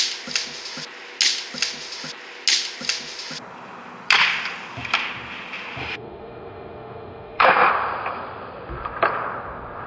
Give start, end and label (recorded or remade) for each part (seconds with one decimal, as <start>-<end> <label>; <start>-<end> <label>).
0.0-5.8 recorded; 5.8-7.7 remade; 7.7-9.9 recorded